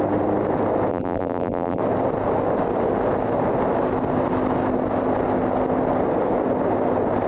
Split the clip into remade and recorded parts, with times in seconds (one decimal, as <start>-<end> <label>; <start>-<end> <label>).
0.0-0.9 recorded; 0.9-1.8 remade; 1.8-7.3 recorded